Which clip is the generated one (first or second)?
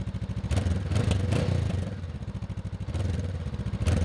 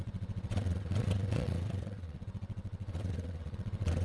second